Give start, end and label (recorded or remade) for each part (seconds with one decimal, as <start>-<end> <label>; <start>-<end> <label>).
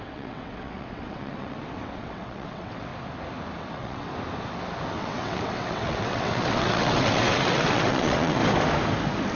0.0-2.9 remade; 2.9-3.6 recorded; 3.6-4.1 remade; 4.1-4.9 recorded; 4.9-8.4 remade; 8.4-9.3 recorded